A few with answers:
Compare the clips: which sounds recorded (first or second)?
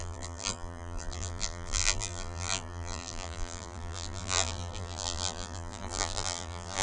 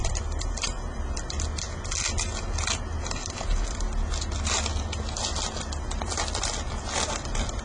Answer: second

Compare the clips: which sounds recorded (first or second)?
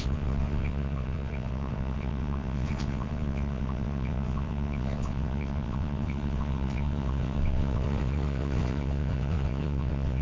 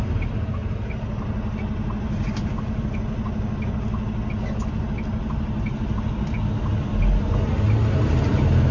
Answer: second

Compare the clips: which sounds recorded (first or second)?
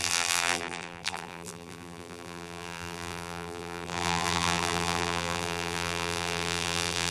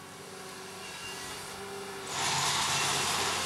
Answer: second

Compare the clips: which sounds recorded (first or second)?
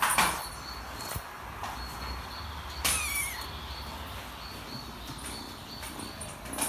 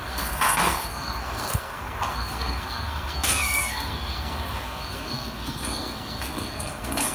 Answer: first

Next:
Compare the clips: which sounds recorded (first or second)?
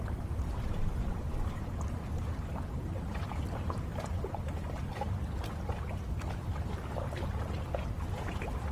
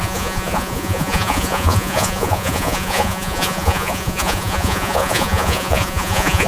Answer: first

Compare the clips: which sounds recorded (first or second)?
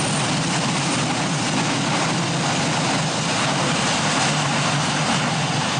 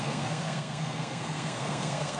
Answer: first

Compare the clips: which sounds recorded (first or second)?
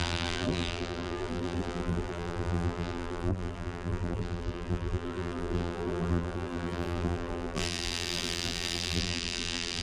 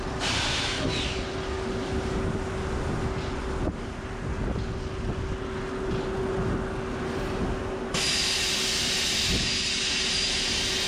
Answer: second